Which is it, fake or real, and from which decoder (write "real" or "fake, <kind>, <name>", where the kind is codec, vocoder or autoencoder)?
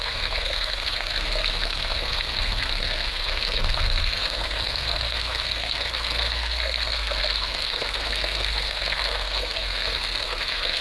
fake, codec, SNAC